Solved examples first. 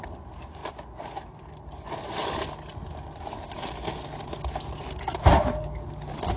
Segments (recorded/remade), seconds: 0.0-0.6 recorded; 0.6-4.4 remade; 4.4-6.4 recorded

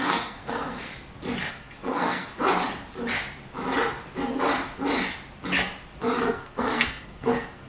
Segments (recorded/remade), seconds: 0.0-0.9 remade; 0.9-1.5 recorded; 1.5-2.3 remade; 2.3-6.2 recorded; 6.2-7.7 remade

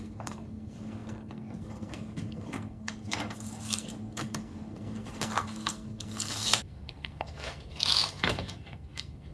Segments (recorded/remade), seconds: 0.0-9.3 remade

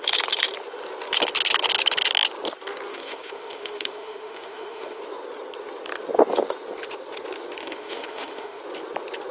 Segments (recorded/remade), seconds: 0.0-2.9 recorded; 2.9-5.0 remade; 5.0-7.6 recorded; 7.6-8.6 remade; 8.6-9.3 recorded

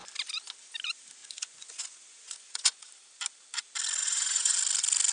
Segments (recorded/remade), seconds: 0.0-1.2 recorded; 1.2-2.9 remade; 2.9-4.0 recorded; 4.0-4.6 remade; 4.6-5.1 recorded

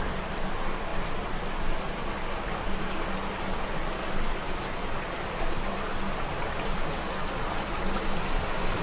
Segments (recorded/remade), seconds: 0.0-8.8 recorded

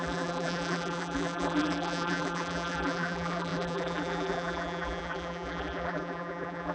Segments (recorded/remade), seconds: 0.0-6.7 remade